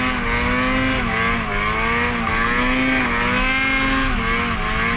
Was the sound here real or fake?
real